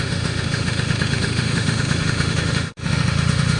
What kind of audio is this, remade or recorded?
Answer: remade